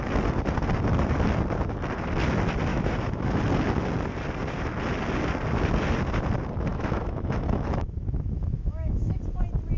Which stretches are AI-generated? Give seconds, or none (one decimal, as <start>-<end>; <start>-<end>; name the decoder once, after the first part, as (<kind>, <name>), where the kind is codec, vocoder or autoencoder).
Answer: 2.7-3.4 (autoencoder, DAC-VAE); 6.7-9.2

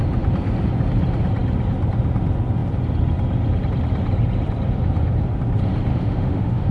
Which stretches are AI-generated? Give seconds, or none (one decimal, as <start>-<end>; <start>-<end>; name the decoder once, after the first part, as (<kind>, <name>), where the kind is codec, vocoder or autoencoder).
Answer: 5.9-6.7 (autoencoder, DAC-VAE)

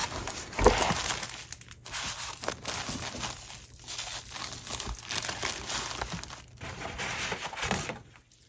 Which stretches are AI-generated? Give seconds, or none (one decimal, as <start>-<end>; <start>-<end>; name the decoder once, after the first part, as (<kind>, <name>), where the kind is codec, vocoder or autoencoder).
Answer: none

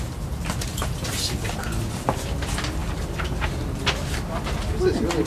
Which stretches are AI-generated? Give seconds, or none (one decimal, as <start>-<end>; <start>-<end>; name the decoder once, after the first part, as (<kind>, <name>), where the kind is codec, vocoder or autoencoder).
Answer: none